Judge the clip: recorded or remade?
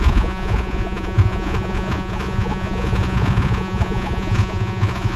remade